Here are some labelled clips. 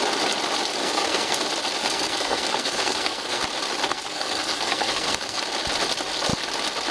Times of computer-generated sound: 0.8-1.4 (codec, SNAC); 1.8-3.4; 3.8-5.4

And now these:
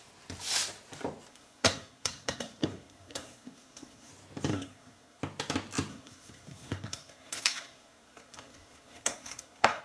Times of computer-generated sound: 1.3-4.1 (codec, SNAC); 4.5-5.2; 5.9-9.8

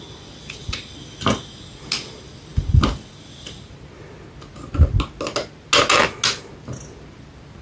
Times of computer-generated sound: none

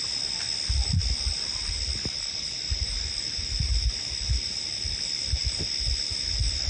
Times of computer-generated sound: none

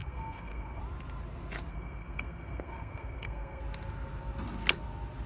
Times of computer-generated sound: 0.0-0.8 (codec, SNAC); 1.7-3.6

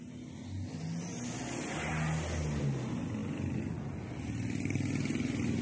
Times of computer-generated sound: none

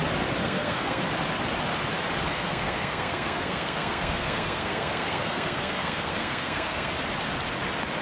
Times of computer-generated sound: 0.4-1.0 (codec, SNAC); 2.3-6.9